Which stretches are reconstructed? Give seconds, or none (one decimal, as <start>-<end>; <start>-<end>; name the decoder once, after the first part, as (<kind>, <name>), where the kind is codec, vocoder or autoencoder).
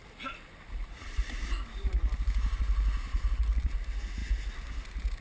0.8-2.6 (vocoder, BigVGAN v2)